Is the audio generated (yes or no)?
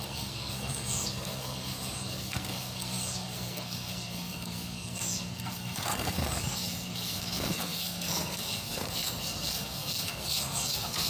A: yes